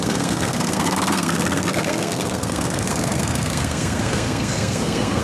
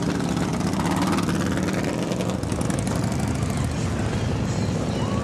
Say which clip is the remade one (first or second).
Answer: first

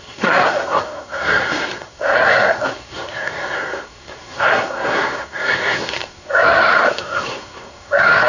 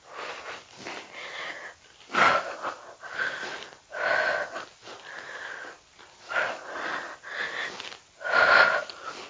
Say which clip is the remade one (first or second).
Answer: first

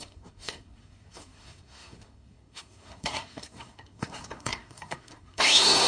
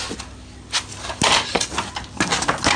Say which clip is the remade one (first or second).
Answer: first